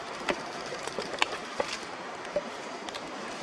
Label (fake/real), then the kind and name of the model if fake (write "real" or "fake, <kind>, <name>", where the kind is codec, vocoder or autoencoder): fake, vocoder, BigVGAN v2